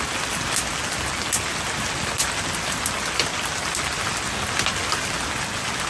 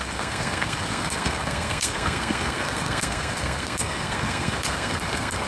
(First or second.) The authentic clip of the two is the first